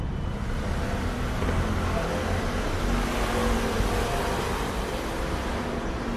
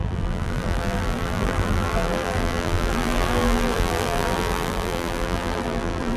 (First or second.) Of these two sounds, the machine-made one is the second